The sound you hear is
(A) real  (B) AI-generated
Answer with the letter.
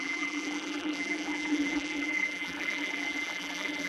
B